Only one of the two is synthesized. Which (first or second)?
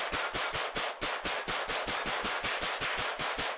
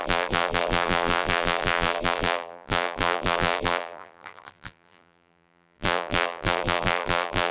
second